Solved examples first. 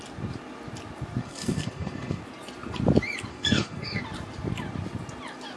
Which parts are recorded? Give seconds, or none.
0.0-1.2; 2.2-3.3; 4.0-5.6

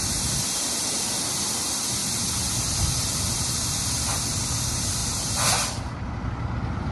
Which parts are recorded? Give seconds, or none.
0.0-6.9